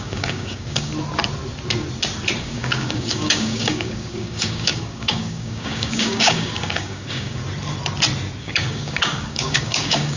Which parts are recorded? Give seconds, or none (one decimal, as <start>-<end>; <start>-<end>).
0.9-2.4; 7.4-8.4